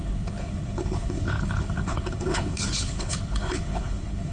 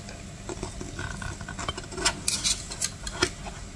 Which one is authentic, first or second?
second